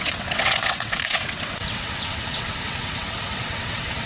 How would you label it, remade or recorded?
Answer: remade